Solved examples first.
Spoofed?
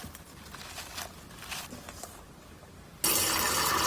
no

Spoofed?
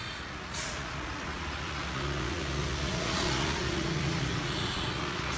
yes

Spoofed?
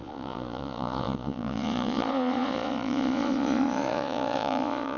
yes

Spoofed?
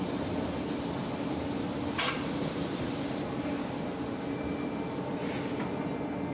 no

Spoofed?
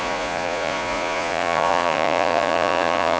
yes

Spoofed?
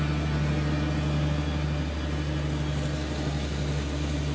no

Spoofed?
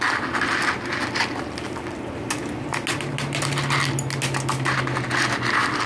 no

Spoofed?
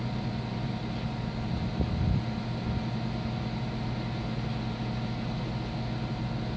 no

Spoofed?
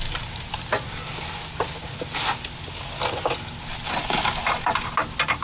no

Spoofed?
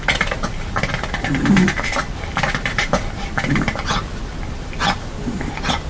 no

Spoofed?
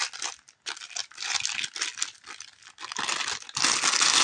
no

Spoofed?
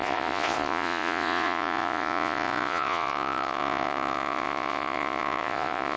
yes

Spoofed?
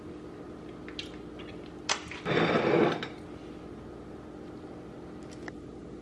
no